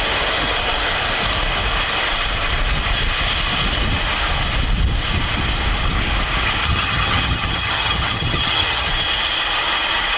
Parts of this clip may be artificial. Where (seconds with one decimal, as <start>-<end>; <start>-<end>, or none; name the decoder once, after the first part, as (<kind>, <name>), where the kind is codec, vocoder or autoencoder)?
6.6-8.9 (vocoder, HiFi-GAN)

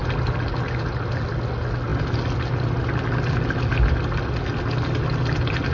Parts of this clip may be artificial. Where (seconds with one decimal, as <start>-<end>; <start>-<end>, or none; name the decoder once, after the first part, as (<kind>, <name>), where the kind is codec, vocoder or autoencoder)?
none